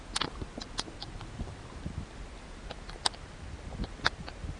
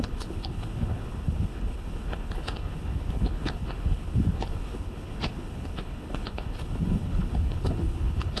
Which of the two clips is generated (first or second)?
second